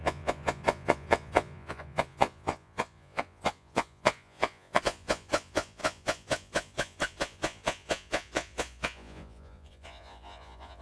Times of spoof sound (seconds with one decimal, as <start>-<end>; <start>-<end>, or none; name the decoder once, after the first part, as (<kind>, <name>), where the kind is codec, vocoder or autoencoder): 0.0-10.8 (vocoder, Vocos)